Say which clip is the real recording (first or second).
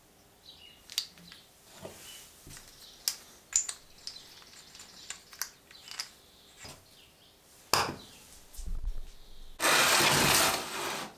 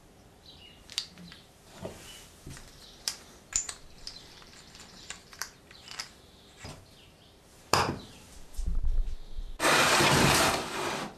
first